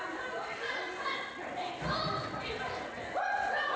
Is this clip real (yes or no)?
yes